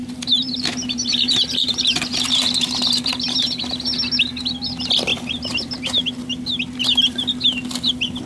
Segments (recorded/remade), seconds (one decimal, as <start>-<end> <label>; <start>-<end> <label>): 0.0-3.6 remade; 3.6-5.1 recorded; 5.1-6.1 remade; 6.1-8.3 recorded